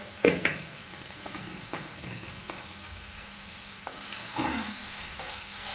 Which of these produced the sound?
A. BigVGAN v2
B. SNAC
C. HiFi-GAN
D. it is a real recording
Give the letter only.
B